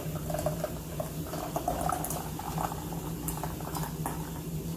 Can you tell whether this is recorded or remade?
recorded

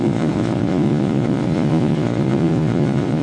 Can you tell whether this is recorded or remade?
remade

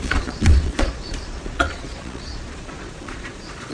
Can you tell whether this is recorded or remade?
remade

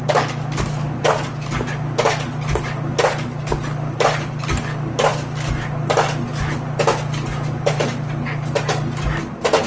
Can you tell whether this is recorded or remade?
recorded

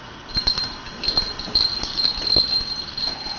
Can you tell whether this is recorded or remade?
recorded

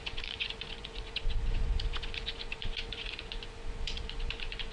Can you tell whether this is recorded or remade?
remade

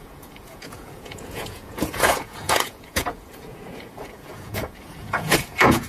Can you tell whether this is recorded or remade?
remade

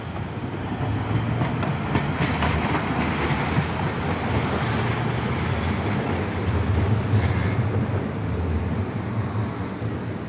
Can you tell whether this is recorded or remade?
recorded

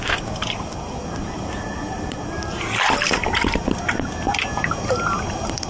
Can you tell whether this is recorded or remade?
recorded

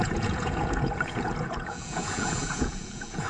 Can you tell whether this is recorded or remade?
remade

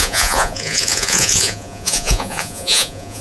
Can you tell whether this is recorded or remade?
remade